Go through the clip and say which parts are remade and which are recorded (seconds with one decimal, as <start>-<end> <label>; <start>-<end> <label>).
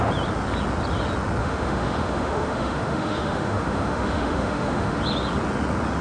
0.0-1.4 recorded; 1.4-5.0 remade; 5.0-6.0 recorded